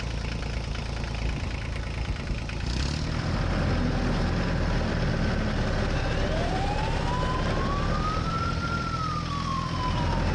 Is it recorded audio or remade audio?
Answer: recorded